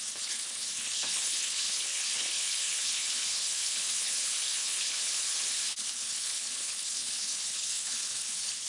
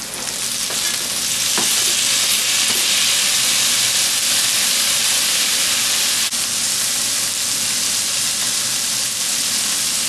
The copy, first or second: first